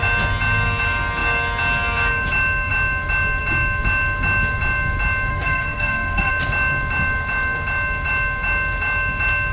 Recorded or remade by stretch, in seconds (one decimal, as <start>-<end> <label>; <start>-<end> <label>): 0.0-5.3 recorded; 5.3-6.3 remade; 6.3-9.5 recorded